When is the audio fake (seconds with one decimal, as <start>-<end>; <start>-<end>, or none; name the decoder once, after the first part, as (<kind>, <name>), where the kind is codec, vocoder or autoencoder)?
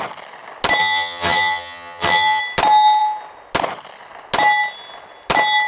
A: 0.8-2.4 (vocoder, HiFi-GAN)